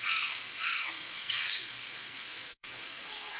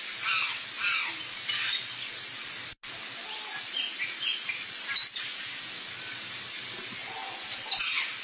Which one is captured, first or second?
second